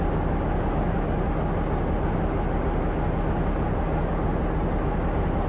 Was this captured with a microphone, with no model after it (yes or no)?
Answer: yes